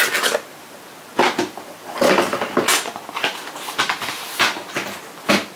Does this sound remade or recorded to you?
recorded